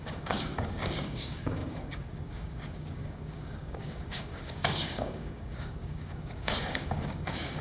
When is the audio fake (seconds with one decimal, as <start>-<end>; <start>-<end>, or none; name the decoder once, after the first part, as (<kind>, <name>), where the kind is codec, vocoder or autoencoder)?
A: 0.0-7.6 (codec, DAC)